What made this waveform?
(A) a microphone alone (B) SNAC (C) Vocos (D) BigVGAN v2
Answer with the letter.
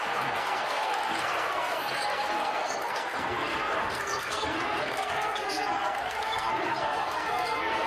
B